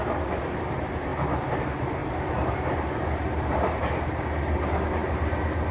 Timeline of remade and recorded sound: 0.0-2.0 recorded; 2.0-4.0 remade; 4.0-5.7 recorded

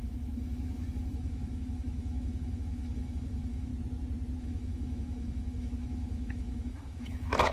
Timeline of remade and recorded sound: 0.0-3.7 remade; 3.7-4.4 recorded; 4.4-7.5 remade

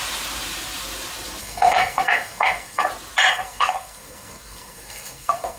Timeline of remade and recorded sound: 0.0-1.4 recorded; 1.4-2.9 remade; 2.9-3.3 recorded; 3.3-5.6 remade